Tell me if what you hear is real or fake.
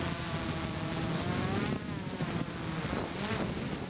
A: real